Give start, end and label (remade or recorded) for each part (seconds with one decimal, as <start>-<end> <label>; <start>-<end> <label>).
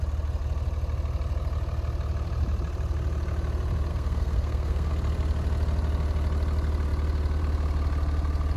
0.0-3.9 recorded; 3.9-4.9 remade; 4.9-8.6 recorded